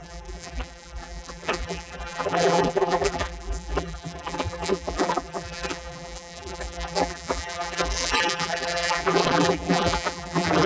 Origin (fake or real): fake